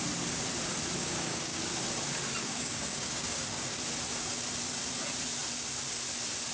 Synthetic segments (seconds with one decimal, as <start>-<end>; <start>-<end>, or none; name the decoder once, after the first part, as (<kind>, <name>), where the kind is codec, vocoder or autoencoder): 1.0-1.6 (codec, DAC); 2.4-3.8